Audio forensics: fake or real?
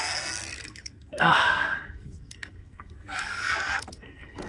fake